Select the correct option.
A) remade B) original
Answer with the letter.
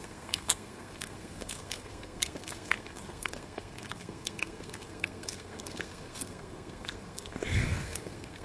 A